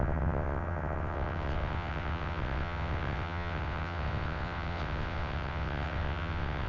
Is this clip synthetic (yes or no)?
yes